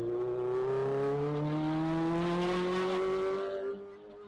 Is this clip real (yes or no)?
yes